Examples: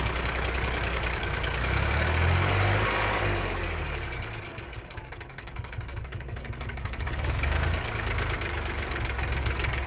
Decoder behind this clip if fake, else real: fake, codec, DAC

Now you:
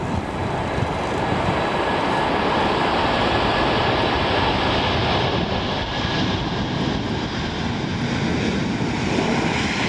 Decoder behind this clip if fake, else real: real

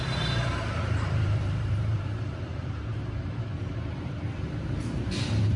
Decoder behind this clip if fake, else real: fake, vocoder, BigVGAN v2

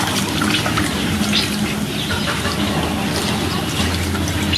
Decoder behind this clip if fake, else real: real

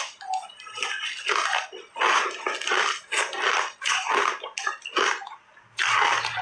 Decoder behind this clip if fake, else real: real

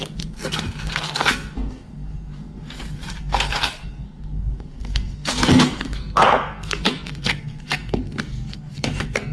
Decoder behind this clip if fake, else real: fake, codec, SNAC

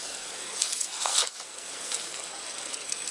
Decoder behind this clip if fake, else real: fake, codec, SNAC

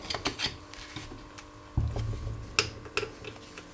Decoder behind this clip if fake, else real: real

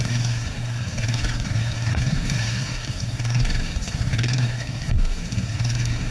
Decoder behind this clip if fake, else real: fake, codec, SNAC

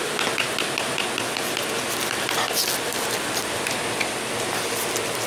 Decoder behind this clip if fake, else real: real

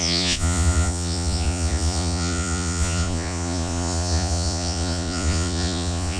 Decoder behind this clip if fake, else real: fake, vocoder, Vocos